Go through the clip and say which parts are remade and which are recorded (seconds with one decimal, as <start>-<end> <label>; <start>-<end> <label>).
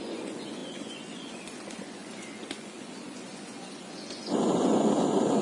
0.0-5.4 remade